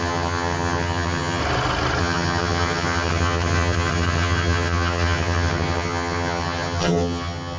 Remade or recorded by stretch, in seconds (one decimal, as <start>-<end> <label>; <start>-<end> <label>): 0.0-1.4 remade; 1.4-2.0 recorded; 2.0-7.6 remade